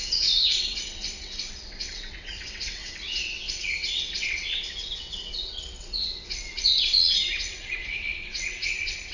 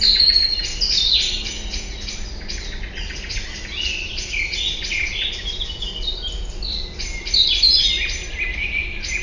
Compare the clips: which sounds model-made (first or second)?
first